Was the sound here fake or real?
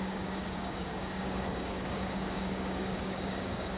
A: fake